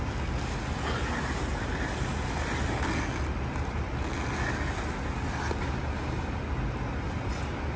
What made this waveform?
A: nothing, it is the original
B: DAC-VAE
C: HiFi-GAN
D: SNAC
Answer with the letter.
A